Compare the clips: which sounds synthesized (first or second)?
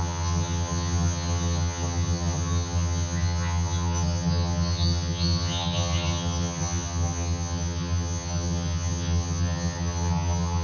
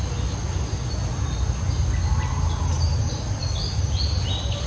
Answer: first